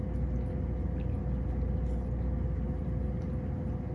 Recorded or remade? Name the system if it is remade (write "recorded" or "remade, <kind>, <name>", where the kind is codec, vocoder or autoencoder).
recorded